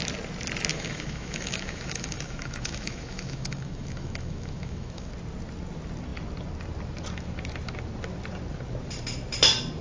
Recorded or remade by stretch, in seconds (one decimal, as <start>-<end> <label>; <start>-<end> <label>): 0.0-0.7 recorded; 0.7-5.1 remade; 5.1-9.8 recorded